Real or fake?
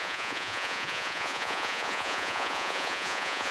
fake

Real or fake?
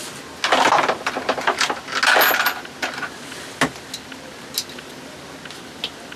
real